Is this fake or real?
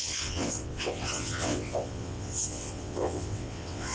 fake